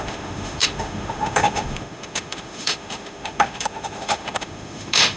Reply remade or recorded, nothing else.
remade